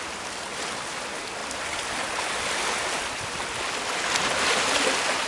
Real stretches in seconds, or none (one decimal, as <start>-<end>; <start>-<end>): 0.0-5.3